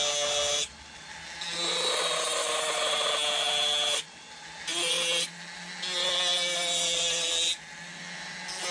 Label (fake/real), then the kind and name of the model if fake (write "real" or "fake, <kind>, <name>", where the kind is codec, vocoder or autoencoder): real